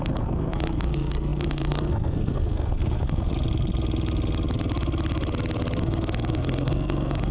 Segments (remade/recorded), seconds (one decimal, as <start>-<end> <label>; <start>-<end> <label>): 0.0-3.3 remade; 3.3-5.8 recorded; 5.8-7.3 remade